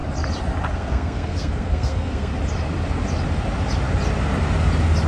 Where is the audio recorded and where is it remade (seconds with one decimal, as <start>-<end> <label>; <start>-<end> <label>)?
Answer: 0.0-0.7 recorded; 0.7-2.3 remade; 2.3-5.1 recorded